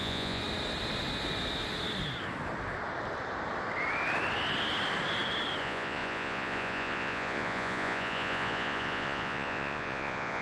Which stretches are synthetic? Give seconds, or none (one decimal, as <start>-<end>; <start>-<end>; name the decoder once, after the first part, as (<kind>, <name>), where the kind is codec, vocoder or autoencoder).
0.0-0.4 (vocoder, Vocos); 5.6-10.4